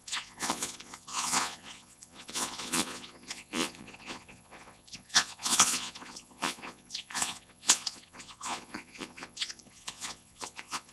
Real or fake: fake